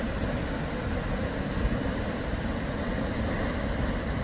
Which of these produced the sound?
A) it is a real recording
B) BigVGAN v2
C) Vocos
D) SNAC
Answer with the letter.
A